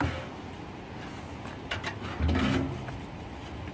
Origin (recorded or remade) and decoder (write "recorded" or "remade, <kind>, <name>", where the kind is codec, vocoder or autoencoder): recorded